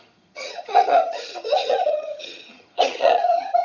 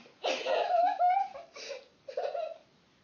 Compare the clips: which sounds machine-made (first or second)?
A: first